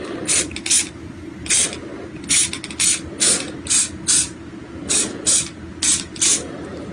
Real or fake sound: real